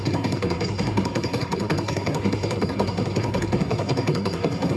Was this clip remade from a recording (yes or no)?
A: yes